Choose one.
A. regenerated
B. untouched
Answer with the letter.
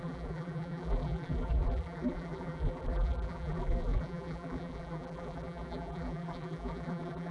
A